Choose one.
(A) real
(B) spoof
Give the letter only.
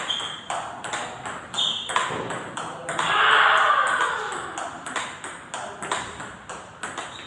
A